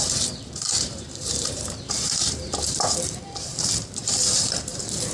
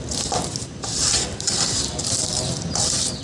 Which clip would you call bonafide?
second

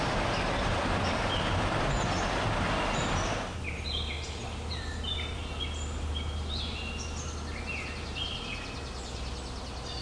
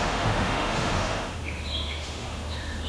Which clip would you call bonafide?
first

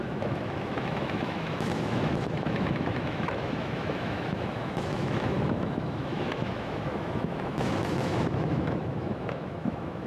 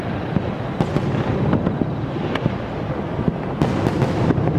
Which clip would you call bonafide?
second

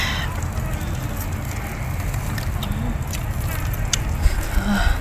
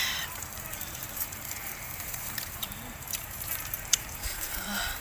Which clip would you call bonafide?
first